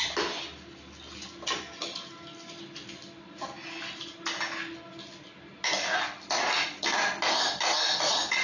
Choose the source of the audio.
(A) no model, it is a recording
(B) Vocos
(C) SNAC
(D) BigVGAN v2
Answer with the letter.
A